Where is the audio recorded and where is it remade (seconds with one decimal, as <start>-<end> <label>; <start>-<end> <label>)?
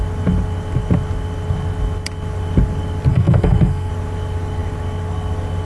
0.0-3.1 recorded; 3.1-3.9 remade; 3.9-5.6 recorded